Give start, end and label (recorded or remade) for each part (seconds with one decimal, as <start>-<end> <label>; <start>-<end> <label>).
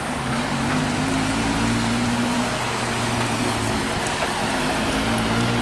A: 0.0-0.8 remade; 0.8-4.0 recorded; 4.0-4.4 remade; 4.4-5.6 recorded